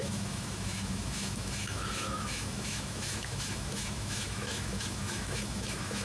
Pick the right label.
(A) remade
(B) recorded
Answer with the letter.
A